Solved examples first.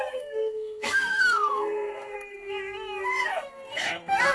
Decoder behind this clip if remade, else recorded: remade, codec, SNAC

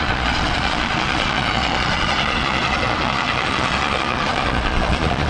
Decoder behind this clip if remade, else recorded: remade, vocoder, Vocos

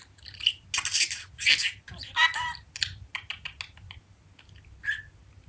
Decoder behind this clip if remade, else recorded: recorded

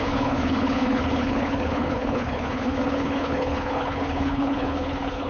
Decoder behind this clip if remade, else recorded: remade, codec, HILCodec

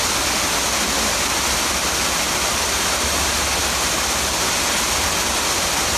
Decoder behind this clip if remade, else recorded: recorded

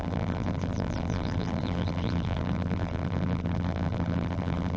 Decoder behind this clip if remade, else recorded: remade, vocoder, BigVGAN v2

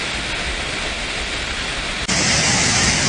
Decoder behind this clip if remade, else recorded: recorded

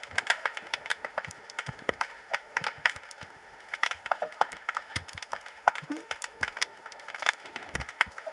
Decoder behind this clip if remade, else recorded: remade, autoencoder, DAC-VAE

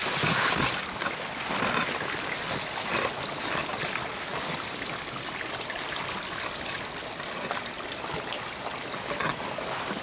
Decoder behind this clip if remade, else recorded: recorded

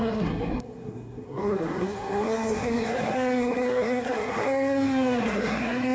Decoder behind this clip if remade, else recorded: remade, codec, SNAC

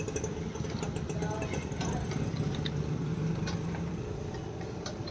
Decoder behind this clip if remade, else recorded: recorded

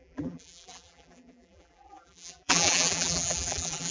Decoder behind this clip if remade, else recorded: remade, vocoder, BigVGAN v2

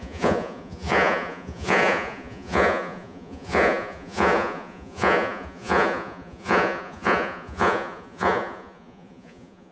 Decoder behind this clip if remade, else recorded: remade, vocoder, Vocos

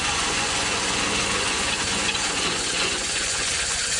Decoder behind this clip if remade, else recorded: remade, vocoder, Vocos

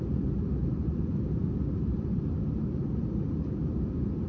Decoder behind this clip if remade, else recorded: recorded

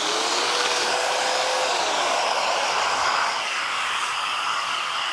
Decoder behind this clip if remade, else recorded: remade, codec, DAC